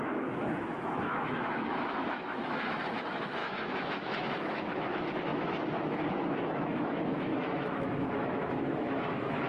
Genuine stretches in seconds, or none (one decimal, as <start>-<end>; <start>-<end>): none